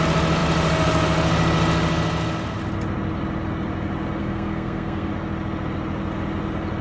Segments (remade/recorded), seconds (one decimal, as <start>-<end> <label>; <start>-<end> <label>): 0.0-4.2 recorded; 4.2-5.1 remade; 5.1-6.8 recorded